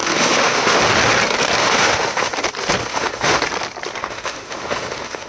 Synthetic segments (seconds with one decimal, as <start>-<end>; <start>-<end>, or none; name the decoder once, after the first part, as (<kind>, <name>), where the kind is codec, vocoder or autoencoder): 0.0-0.8 (autoencoder, DAC-VAE); 1.6-2.3; 2.8-3.4; 4.0-5.3